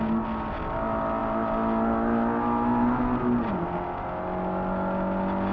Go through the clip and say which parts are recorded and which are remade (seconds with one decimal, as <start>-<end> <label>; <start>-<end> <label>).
0.0-5.5 recorded